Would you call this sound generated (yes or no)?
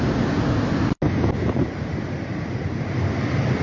no